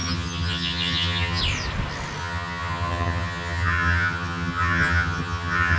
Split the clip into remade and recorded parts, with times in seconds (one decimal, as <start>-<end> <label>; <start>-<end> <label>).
0.0-1.4 remade; 1.4-2.2 recorded; 2.2-5.8 remade